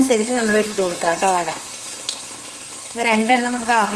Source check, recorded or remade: remade